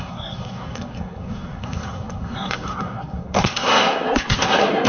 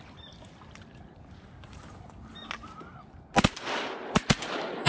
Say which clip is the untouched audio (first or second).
second